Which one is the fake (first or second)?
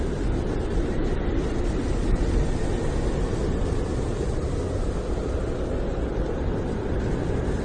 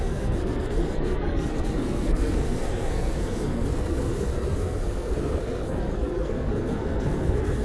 second